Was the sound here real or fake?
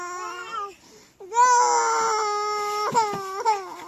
real